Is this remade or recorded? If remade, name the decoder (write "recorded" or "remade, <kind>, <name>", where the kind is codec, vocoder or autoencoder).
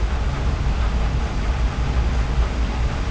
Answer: recorded